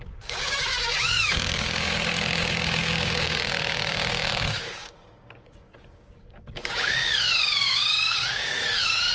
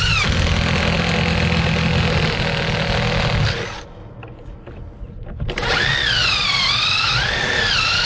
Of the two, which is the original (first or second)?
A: second